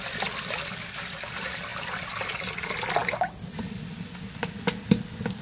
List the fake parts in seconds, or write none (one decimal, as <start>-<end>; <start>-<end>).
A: none